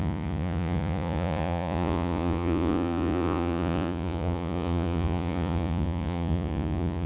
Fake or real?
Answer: fake